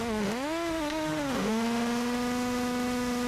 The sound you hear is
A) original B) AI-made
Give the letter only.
B